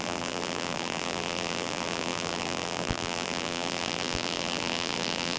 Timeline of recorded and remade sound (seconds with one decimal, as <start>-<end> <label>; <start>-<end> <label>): 0.0-5.4 remade